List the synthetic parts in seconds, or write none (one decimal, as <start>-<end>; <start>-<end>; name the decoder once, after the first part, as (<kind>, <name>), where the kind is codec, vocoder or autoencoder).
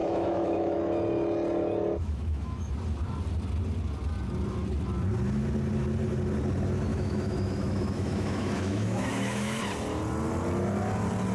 0.0-0.8 (autoencoder, DAC-VAE); 2.0-2.7; 6.9-9.6